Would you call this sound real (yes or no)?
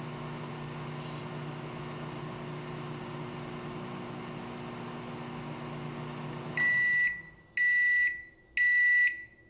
yes